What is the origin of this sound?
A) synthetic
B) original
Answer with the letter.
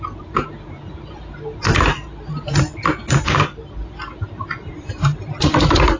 A